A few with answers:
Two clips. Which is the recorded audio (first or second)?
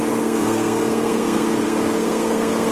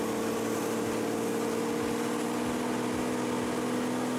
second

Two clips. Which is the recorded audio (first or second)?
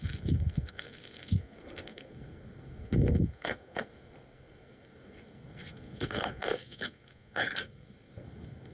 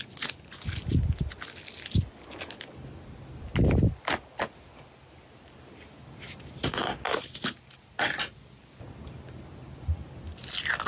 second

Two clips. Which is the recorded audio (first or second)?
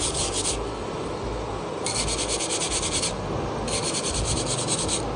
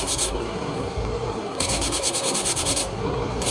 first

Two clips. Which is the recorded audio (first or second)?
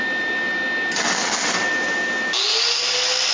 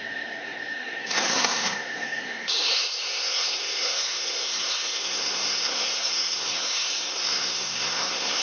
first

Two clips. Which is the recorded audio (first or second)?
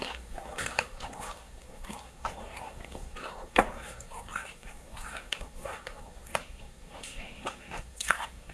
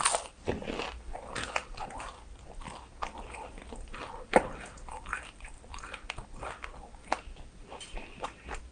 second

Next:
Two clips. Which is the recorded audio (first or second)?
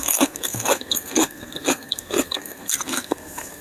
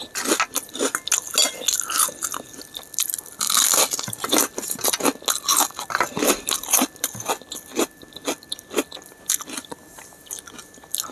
second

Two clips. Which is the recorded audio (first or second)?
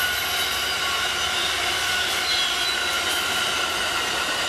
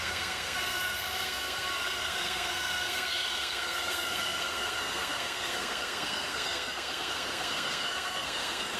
first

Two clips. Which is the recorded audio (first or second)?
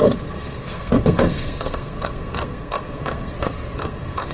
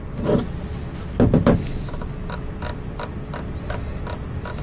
second